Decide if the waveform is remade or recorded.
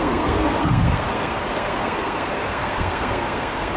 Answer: remade